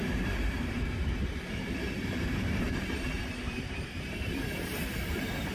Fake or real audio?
fake